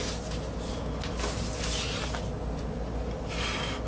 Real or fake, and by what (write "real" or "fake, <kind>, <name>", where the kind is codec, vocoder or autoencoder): real